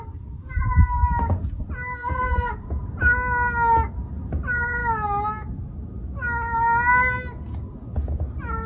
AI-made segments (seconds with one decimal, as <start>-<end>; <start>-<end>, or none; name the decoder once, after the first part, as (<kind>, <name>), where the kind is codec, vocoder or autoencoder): 2.0-2.8 (vocoder, Vocos)